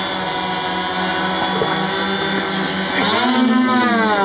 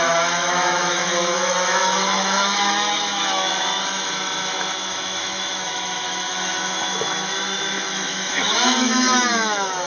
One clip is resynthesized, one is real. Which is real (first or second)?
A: first